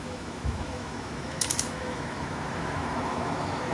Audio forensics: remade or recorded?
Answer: remade